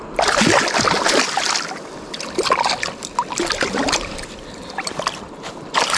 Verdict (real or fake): real